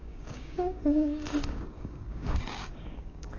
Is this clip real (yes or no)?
no